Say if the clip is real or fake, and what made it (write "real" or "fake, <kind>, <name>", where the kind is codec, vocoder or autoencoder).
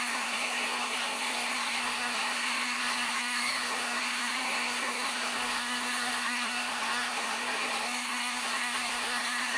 fake, codec, SNAC